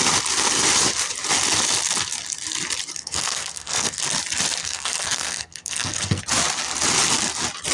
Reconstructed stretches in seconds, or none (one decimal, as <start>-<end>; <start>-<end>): 3.0-4.0; 4.6-6.2